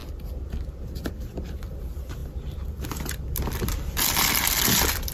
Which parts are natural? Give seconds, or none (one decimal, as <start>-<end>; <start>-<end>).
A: 0.0-1.1